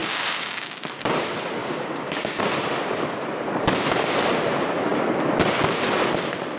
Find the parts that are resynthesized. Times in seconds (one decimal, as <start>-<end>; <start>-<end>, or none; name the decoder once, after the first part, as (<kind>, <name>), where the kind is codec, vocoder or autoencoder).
0.0-0.8 (codec, DAC); 1.6-2.4